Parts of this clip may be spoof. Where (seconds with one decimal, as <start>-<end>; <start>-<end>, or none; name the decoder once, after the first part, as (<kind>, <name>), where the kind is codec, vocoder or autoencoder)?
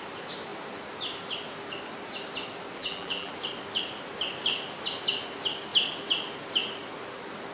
2.8-3.3 (vocoder, BigVGAN v2)